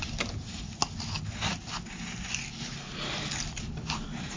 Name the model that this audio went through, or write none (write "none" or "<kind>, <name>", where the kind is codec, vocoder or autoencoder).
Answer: none